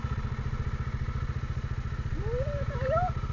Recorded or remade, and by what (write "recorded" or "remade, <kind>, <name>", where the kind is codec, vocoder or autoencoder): recorded